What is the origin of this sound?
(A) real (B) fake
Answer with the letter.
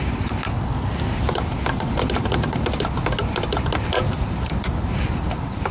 A